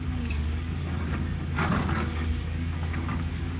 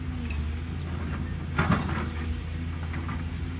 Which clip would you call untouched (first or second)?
second